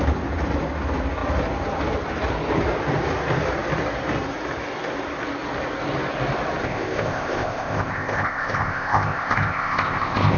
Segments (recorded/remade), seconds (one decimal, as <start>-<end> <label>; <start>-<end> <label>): 0.0-6.6 recorded; 6.6-10.4 remade